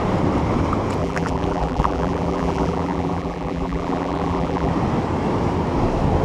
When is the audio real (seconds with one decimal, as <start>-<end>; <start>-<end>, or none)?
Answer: 0.0-1.0; 4.7-6.2